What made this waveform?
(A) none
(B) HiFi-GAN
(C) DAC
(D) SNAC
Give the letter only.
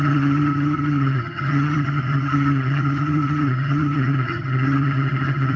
B